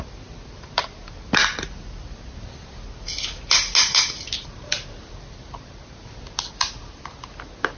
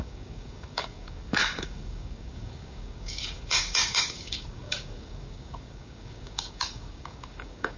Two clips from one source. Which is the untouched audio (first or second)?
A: first